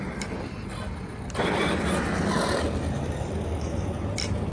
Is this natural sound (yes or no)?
yes